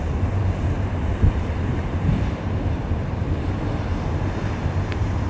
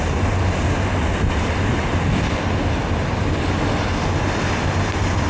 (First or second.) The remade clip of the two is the first